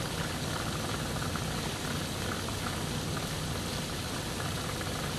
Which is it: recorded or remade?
recorded